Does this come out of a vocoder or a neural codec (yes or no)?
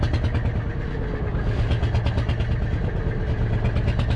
no